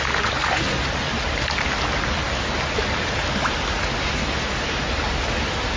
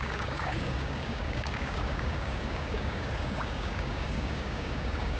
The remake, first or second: second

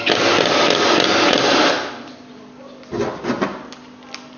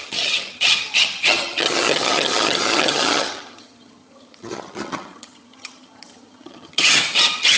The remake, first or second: second